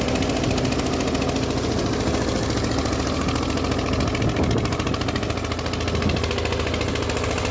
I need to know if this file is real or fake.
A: real